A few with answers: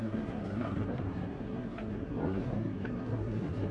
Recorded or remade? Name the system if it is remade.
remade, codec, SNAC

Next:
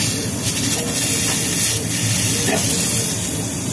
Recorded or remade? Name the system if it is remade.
recorded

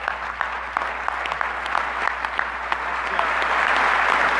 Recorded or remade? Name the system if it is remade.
recorded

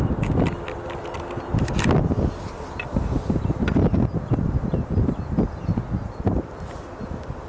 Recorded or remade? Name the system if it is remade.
recorded